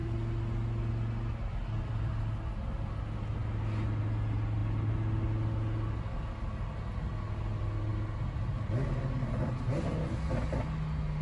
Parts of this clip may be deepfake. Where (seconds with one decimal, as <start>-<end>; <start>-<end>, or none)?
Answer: none

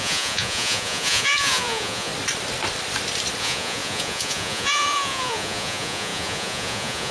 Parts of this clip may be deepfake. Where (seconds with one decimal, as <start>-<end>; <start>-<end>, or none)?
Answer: 0.0-2.1; 3.4-7.1

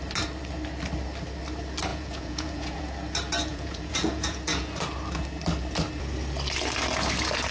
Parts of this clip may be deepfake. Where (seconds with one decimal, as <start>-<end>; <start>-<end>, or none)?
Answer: 1.9-2.8; 3.5-4.4

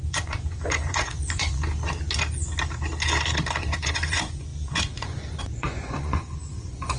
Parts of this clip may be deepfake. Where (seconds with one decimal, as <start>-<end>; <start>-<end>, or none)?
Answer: 0.0-1.6; 3.6-7.0

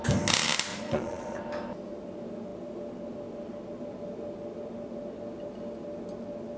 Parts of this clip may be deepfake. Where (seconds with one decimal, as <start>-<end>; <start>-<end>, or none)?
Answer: 0.7-1.4

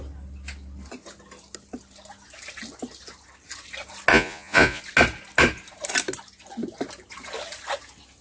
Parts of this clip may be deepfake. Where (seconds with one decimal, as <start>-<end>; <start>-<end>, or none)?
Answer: 4.1-4.8